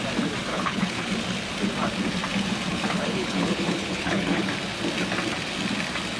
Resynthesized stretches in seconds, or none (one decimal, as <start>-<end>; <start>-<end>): 0.5-1.1; 2.7-4.5